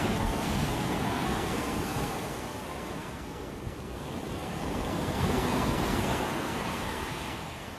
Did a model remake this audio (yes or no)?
yes